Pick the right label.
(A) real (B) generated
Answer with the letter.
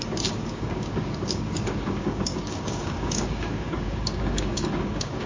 B